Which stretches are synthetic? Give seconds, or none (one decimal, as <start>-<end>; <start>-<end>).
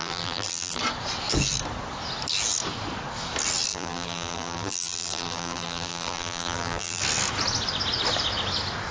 0.0-0.8; 3.7-7.0